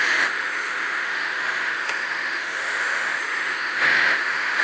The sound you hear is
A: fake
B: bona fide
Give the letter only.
A